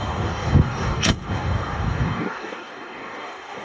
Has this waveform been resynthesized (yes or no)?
yes